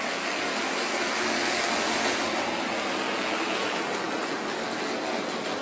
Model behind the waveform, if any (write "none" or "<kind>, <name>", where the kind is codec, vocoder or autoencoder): none